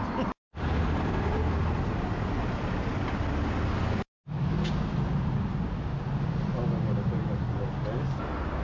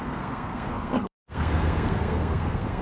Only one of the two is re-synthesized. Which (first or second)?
second